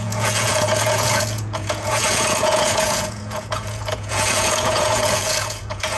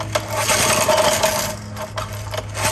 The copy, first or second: first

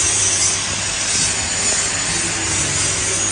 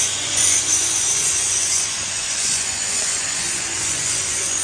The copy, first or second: second